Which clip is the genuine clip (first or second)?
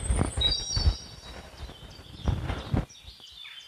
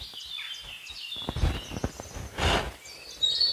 second